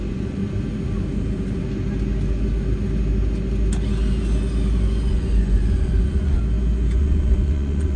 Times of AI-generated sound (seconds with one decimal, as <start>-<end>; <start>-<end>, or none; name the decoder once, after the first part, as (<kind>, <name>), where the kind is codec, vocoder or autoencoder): 0.0-0.4 (vocoder, Vocos); 5.1-6.4; 7.0-8.0